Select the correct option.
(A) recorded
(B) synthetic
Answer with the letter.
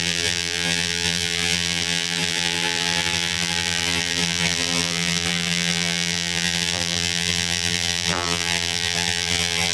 B